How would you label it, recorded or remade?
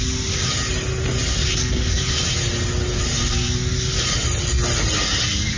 recorded